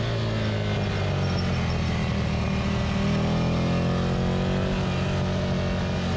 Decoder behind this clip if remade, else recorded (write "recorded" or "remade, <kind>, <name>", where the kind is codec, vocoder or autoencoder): recorded